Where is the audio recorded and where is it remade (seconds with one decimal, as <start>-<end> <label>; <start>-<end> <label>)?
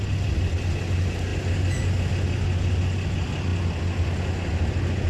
0.0-5.1 recorded